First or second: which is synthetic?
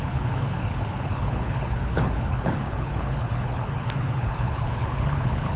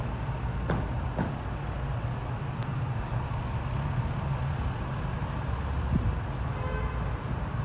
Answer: first